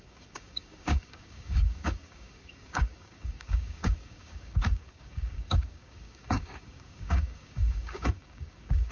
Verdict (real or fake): fake